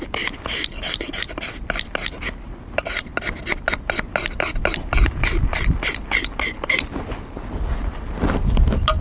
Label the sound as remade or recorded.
remade